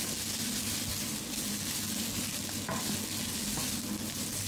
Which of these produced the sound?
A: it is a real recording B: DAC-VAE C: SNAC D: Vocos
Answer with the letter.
A